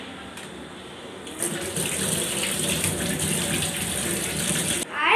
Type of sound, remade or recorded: recorded